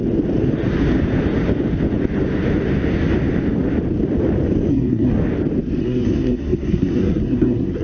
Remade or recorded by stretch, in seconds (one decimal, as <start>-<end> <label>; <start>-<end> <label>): 0.0-4.7 recorded; 4.7-5.2 remade; 5.2-5.8 recorded; 5.8-7.8 remade

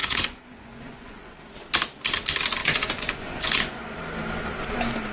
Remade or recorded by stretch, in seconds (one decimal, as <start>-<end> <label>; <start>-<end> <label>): 0.0-1.3 remade; 1.3-2.6 recorded; 2.6-4.0 remade; 4.0-5.1 recorded

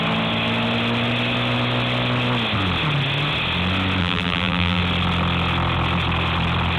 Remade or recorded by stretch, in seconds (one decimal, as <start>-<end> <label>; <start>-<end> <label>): 0.0-4.0 recorded; 4.0-4.8 remade; 4.8-6.8 recorded

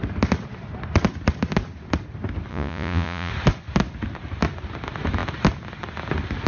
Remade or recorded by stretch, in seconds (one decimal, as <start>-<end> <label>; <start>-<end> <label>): 0.0-2.5 recorded; 2.5-3.3 remade; 3.3-6.5 recorded

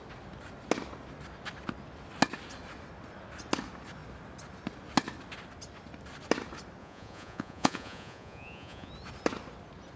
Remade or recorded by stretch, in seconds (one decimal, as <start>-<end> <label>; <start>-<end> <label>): 0.0-6.8 recorded; 6.8-8.9 remade; 8.9-10.0 recorded

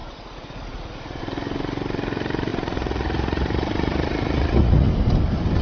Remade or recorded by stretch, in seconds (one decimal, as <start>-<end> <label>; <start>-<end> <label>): 0.0-1.2 remade; 1.2-2.5 recorded; 2.5-4.9 remade; 4.9-5.6 recorded

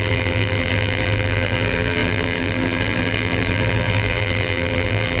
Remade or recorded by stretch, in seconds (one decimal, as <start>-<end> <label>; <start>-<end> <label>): 0.0-5.2 remade

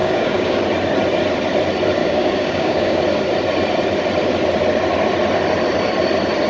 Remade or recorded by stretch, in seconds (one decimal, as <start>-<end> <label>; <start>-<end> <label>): 0.0-0.6 remade; 0.6-2.0 recorded; 2.0-3.0 remade; 3.0-6.5 recorded